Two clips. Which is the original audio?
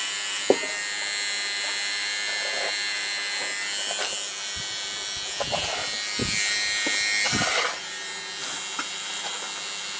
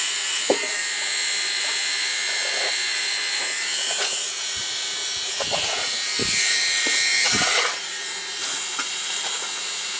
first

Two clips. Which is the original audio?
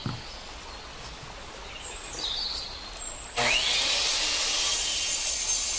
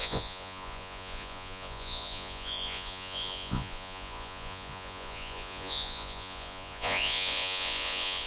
first